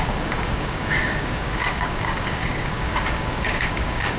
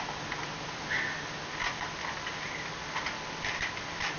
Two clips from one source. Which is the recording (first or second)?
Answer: second